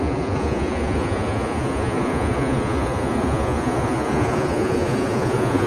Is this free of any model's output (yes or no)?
no